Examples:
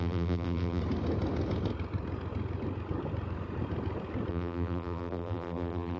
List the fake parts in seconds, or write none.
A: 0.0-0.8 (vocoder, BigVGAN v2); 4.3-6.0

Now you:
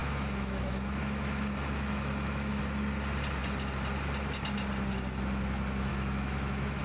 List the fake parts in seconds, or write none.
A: 0.0-2.6 (autoencoder, DAC-VAE); 5.9-6.8